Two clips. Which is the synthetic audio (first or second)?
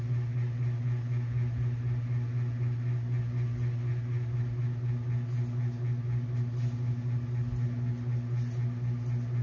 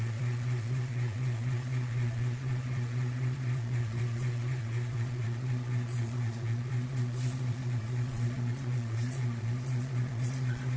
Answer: second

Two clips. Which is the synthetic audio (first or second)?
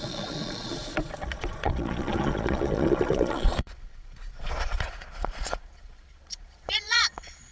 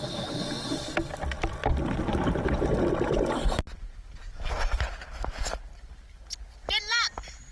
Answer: first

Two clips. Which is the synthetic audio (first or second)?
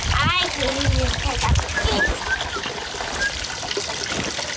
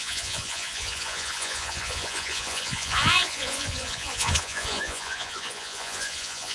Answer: second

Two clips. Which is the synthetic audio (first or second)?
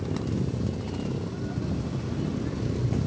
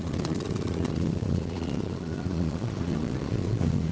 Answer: second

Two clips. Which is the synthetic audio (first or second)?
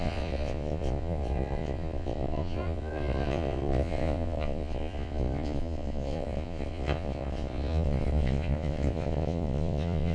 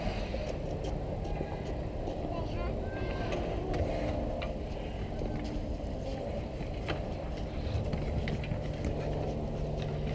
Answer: first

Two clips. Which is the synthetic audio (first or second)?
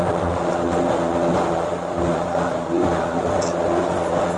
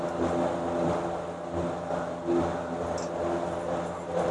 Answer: first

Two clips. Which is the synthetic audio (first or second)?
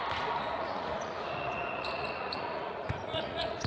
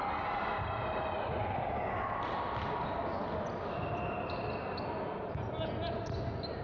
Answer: first